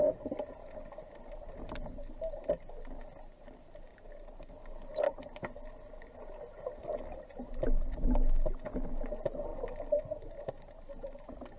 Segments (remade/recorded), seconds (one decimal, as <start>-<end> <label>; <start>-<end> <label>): 0.0-3.9 recorded; 3.9-4.5 remade; 4.5-11.6 recorded